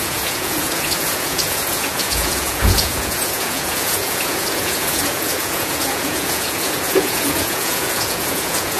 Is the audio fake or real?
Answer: fake